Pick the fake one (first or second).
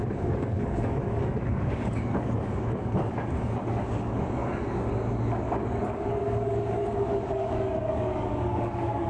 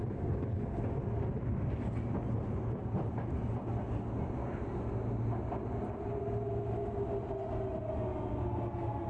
first